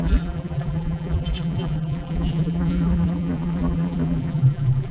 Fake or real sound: fake